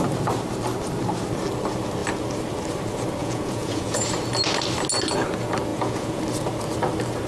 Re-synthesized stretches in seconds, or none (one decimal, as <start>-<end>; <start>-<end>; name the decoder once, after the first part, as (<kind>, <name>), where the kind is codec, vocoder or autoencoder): 3.2-4.1 (vocoder, Vocos); 5.7-6.2